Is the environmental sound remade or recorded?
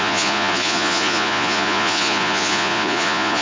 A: remade